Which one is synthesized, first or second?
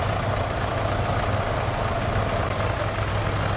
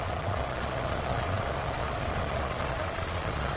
second